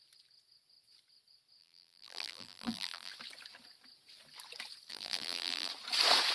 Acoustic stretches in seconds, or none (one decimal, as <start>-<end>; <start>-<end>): 0.0-1.6; 3.1-4.9; 5.7-6.3